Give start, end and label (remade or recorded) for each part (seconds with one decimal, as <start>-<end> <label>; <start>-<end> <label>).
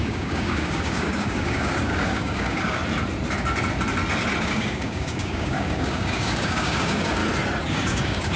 0.0-2.8 remade; 2.8-4.4 recorded; 4.4-7.2 remade; 7.2-7.7 recorded; 7.7-8.4 remade